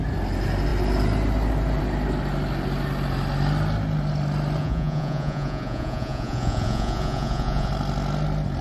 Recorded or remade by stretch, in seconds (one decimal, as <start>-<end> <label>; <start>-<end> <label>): 0.0-4.6 recorded; 4.6-7.7 remade; 7.7-8.6 recorded